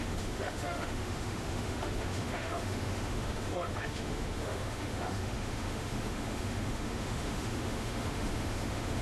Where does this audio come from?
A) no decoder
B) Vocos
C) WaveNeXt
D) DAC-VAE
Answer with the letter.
D